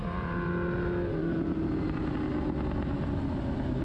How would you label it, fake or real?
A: real